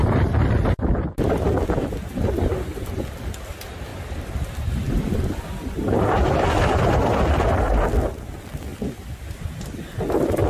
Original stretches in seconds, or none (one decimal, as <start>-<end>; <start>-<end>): 0.0-3.9; 4.7-10.5